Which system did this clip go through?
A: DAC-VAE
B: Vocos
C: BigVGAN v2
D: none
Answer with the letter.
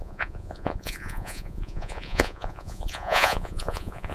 B